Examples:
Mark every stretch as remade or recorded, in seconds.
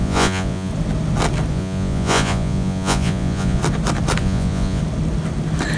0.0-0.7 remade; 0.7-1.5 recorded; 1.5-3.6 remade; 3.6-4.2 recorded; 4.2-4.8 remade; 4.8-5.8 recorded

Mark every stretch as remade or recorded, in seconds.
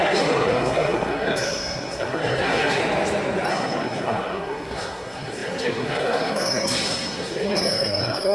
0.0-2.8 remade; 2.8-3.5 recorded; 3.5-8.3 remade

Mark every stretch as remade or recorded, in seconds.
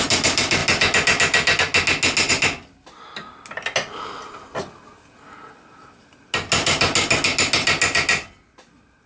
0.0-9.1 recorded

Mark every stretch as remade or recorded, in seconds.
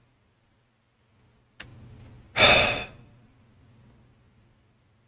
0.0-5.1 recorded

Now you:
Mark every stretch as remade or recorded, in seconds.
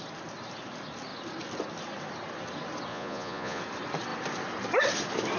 0.0-2.9 recorded; 2.9-3.6 remade; 3.6-5.4 recorded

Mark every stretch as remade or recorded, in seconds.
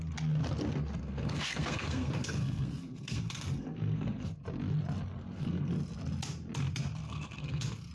0.0-1.0 recorded; 1.0-4.4 remade; 4.4-5.2 recorded; 5.2-5.7 remade; 5.7-7.0 recorded; 7.0-7.9 remade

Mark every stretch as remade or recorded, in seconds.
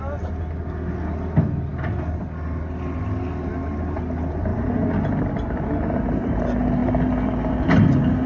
0.0-8.3 recorded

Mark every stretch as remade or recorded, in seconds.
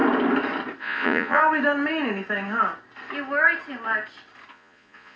0.0-0.8 recorded; 0.8-1.4 remade; 1.4-4.5 recorded; 4.5-5.2 remade